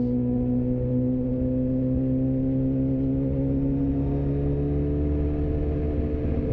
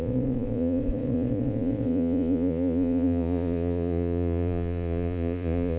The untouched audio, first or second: first